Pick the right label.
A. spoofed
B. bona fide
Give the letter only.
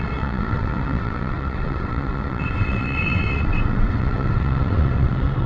A